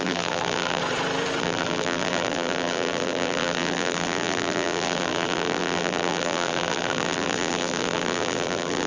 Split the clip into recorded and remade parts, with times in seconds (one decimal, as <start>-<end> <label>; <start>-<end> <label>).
0.0-0.8 remade; 0.8-1.4 recorded; 1.4-8.9 remade

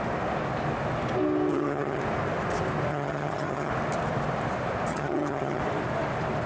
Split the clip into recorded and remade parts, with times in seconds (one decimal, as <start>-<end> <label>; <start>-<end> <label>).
0.0-1.5 recorded; 1.5-2.0 remade; 2.0-2.9 recorded; 2.9-3.7 remade; 3.7-4.9 recorded; 4.9-5.6 remade; 5.6-6.5 recorded

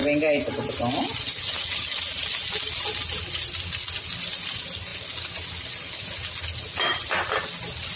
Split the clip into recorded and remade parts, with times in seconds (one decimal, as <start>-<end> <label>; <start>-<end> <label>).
0.0-8.0 recorded

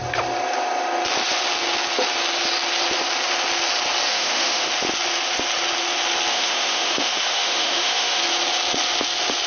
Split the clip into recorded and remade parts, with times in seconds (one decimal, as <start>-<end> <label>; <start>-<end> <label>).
0.0-4.1 recorded; 4.1-4.7 remade; 4.7-6.3 recorded; 6.3-8.2 remade; 8.2-9.5 recorded

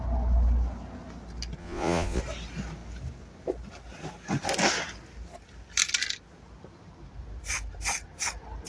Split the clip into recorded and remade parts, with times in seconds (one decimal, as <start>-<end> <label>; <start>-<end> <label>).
0.0-1.6 recorded; 1.6-2.2 remade; 2.2-8.7 recorded

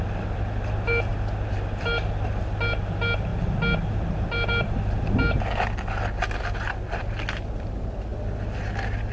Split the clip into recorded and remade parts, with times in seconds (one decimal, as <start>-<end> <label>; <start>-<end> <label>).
0.0-9.1 recorded

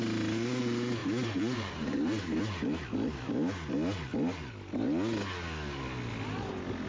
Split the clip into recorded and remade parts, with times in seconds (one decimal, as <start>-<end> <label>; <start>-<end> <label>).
0.0-1.0 recorded; 1.0-2.4 remade; 2.4-6.9 recorded

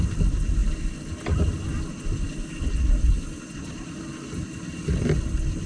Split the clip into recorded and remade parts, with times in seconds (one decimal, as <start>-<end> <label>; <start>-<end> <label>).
0.0-5.7 recorded